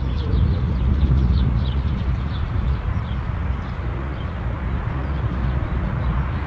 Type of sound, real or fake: fake